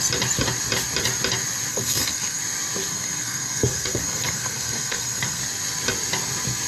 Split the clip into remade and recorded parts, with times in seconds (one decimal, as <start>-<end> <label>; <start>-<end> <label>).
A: 0.0-1.7 recorded; 1.7-2.4 remade; 2.4-2.9 recorded; 2.9-5.4 remade; 5.4-6.7 recorded